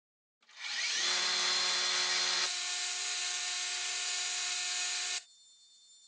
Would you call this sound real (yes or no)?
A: yes